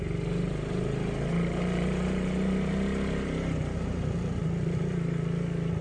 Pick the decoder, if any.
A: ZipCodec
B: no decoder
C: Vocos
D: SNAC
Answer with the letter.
B